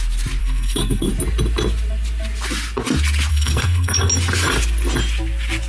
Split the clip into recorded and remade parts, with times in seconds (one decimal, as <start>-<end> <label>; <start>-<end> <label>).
0.0-0.4 recorded; 0.4-1.1 remade; 1.1-3.3 recorded; 3.3-4.1 remade; 4.1-5.7 recorded